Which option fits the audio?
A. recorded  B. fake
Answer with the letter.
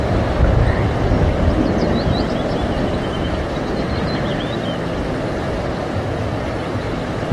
B